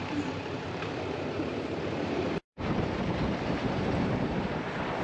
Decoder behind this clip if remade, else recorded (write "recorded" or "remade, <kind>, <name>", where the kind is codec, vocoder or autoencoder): remade, vocoder, BigVGAN v2